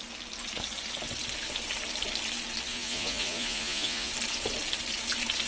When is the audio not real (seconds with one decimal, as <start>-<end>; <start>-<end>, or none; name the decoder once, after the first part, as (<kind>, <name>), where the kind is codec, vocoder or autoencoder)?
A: 2.7-4.1 (vocoder, Vocos)